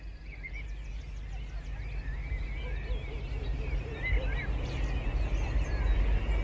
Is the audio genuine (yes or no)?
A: yes